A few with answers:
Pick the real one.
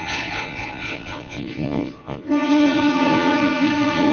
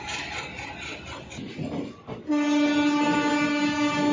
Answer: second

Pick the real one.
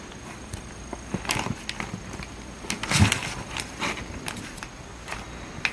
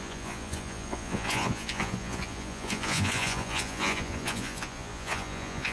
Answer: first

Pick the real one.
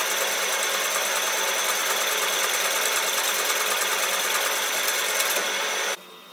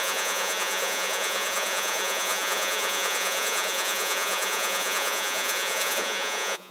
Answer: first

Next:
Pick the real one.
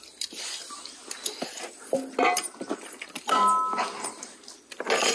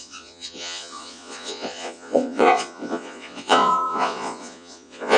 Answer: first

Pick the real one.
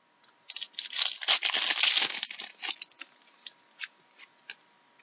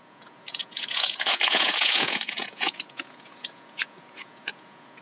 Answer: first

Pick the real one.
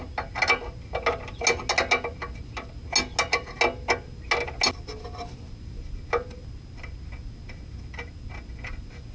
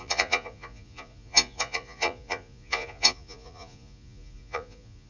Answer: first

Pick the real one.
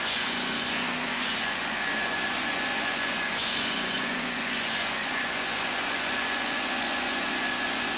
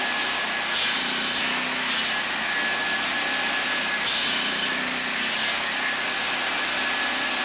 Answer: second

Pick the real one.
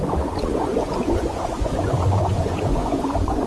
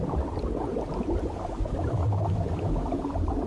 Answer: second